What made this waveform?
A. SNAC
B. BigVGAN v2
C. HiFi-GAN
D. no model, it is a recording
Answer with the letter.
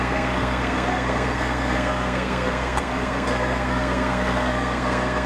A